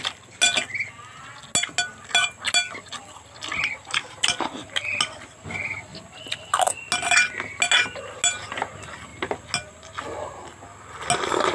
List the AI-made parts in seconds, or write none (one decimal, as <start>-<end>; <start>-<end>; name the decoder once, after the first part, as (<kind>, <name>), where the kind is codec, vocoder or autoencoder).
none